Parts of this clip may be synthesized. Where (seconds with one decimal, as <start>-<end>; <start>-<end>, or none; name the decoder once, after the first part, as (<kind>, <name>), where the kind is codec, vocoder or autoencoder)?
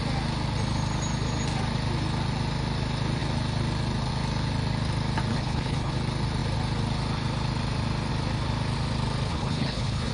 5.3-5.9 (codec, HILCodec); 9.3-10.1